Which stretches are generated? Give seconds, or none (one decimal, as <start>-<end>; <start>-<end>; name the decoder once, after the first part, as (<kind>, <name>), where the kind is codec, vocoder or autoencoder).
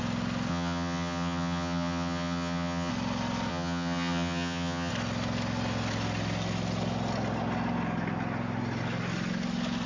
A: 0.5-2.9 (vocoder, HiFi-GAN); 3.5-4.9